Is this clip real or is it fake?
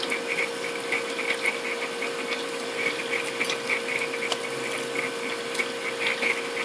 real